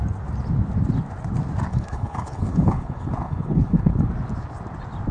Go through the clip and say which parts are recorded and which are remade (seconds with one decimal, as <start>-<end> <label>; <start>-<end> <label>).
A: 0.0-1.7 recorded; 1.7-4.1 remade; 4.1-5.1 recorded